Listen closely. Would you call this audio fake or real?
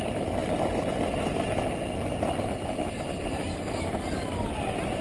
real